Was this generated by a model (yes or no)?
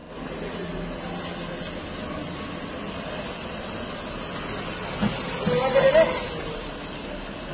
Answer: no